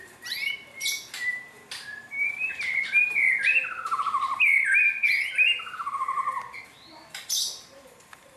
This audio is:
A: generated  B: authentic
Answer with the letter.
A